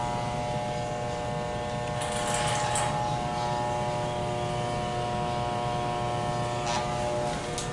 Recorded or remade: recorded